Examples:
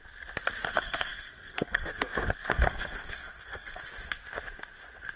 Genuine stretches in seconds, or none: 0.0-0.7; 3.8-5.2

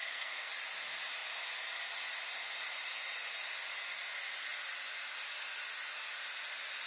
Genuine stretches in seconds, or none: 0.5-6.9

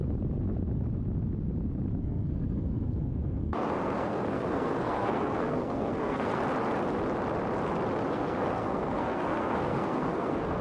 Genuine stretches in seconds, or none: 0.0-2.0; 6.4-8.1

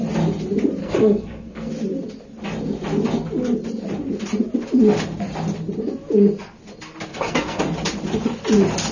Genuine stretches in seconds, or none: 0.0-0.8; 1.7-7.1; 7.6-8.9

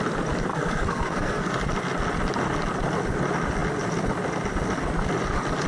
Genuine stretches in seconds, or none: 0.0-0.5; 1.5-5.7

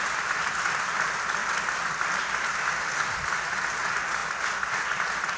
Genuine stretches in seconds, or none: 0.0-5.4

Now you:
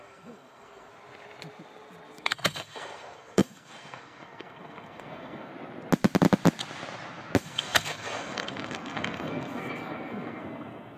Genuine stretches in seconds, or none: 0.9-2.2; 5.5-7.4